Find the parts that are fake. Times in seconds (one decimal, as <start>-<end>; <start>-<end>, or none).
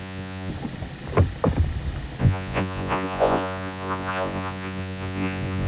0.0-0.5; 2.2-5.7